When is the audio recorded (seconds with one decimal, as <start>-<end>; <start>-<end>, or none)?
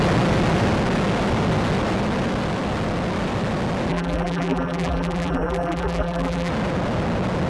0.0-3.9; 6.5-7.5